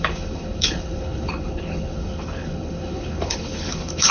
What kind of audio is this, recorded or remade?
remade